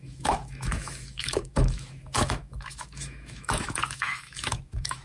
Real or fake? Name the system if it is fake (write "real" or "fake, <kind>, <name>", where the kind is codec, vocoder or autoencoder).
fake, autoencoder, DAC-VAE